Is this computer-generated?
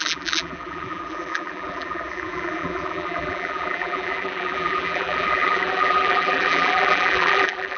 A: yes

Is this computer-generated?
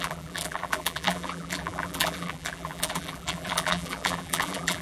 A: yes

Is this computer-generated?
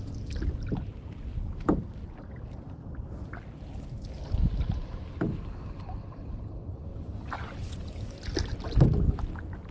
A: no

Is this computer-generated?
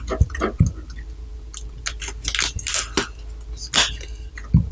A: no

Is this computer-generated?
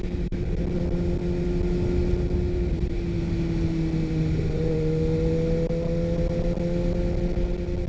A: no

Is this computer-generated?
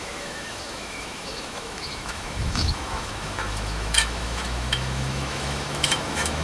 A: yes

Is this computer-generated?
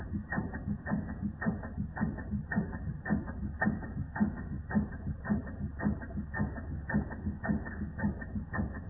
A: no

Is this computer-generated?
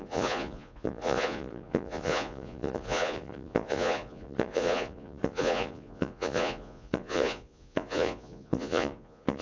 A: yes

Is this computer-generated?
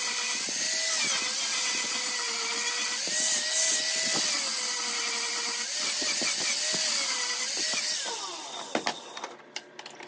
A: no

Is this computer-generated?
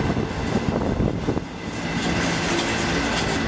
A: no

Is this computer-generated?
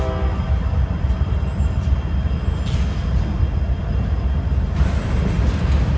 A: no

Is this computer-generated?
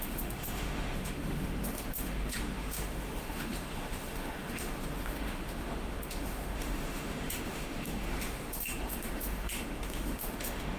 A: yes